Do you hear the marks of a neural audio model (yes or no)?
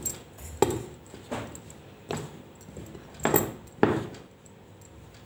no